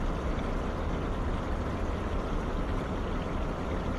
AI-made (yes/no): no